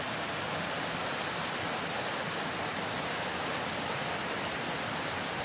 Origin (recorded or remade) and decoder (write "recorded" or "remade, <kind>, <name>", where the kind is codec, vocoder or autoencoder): recorded